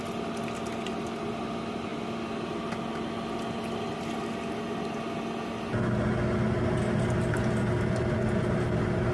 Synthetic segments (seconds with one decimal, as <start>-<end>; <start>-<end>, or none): none